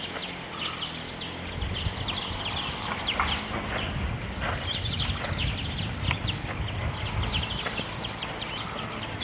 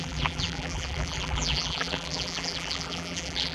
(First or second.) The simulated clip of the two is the second